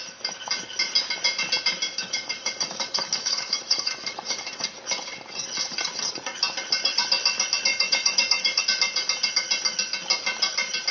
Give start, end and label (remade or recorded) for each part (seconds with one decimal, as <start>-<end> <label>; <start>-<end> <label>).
0.0-1.9 recorded; 1.9-4.6 remade; 4.6-7.7 recorded; 7.7-8.6 remade; 8.6-10.9 recorded